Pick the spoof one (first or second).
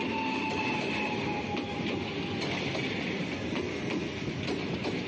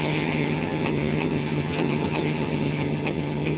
second